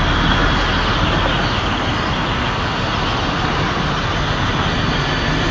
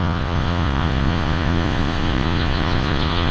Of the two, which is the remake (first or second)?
second